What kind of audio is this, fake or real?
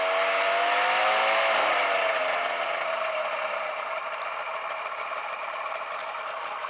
real